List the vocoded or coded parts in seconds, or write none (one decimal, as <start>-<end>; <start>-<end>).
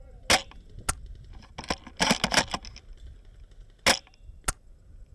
none